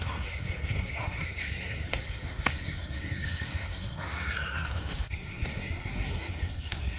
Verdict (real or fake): fake